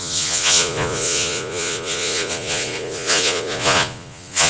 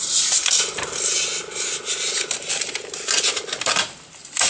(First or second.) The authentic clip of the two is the second